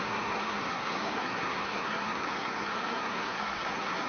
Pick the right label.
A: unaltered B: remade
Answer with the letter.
B